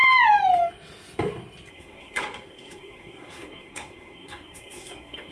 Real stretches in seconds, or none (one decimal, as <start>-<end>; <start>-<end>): 0.0-1.7